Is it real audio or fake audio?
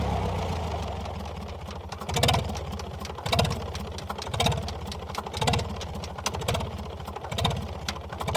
real